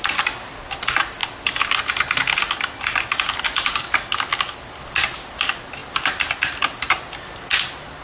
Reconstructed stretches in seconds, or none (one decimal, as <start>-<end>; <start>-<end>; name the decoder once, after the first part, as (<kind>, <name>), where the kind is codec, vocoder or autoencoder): none